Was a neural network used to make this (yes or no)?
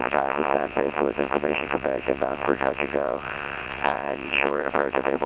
yes